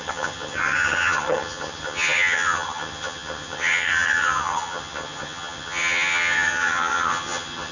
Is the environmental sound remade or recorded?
remade